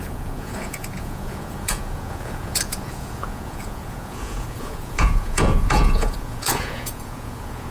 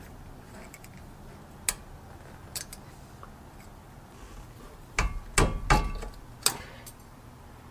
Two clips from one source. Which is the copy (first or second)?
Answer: first